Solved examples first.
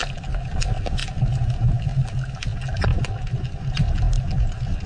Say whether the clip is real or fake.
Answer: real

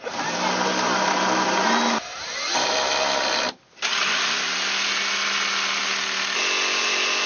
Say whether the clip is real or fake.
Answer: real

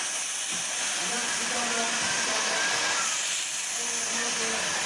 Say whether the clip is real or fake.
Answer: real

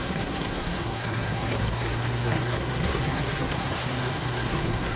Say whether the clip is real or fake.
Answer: fake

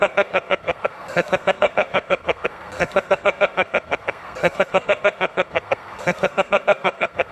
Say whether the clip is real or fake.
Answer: fake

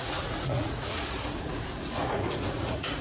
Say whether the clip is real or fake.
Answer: fake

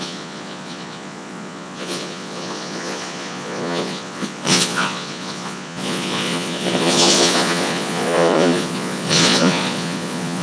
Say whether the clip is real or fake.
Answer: fake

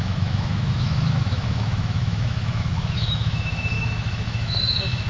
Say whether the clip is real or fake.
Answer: fake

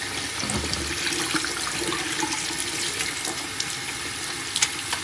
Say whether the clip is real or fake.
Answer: real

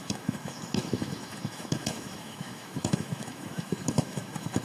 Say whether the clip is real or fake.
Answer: fake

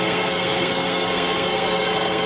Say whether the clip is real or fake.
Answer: fake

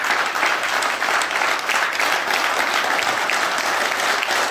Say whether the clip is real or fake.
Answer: real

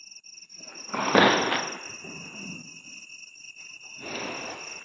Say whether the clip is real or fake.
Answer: real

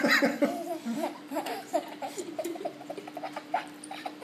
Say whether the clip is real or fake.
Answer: fake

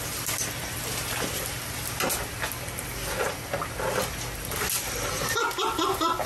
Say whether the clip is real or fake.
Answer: real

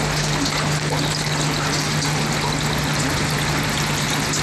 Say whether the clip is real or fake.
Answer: real